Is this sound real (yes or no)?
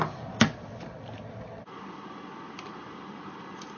yes